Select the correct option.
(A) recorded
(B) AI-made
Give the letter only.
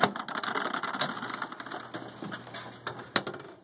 A